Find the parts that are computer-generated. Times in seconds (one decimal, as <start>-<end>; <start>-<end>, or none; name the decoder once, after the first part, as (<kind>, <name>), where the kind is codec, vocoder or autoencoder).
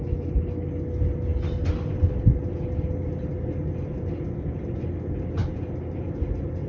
5.4-6.7 (vocoder, BigVGAN v2)